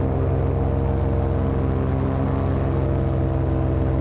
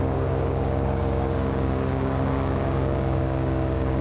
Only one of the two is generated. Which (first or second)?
second